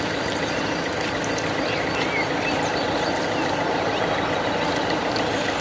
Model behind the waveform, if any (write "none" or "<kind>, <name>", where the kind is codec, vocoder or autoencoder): none